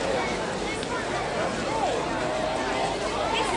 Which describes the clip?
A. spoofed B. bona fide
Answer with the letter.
B